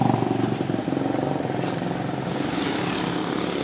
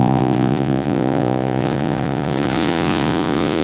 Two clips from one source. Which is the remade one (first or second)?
second